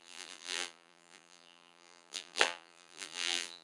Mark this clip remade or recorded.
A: remade